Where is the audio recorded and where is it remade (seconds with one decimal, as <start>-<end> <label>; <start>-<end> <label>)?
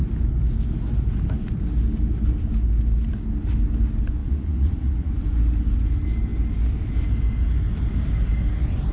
0.0-4.2 recorded; 4.2-5.1 remade; 5.1-8.9 recorded